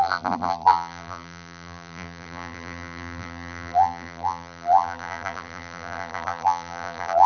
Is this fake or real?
fake